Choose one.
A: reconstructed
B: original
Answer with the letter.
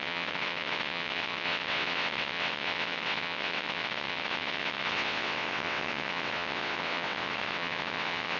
A